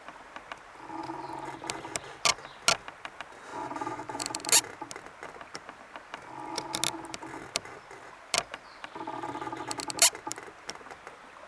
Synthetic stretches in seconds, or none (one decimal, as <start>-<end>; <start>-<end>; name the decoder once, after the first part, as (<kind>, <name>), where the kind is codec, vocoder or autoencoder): 3.5-4.2 (vocoder, Vocos)